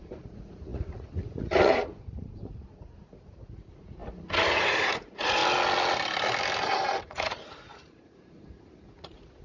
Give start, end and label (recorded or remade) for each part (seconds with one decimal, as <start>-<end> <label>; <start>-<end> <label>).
0.0-5.4 remade; 5.4-7.0 recorded; 7.0-9.4 remade